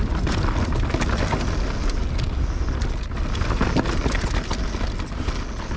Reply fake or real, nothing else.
real